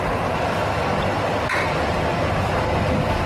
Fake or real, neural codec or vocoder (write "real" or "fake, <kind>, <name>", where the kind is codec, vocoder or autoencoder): real